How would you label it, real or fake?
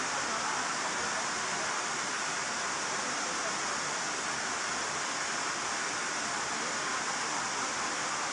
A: real